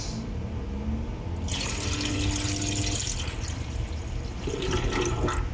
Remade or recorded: recorded